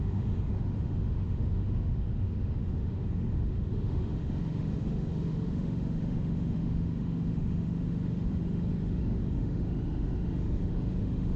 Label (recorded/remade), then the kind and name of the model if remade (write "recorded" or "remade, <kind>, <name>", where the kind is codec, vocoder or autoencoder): remade, autoencoder, DAC-VAE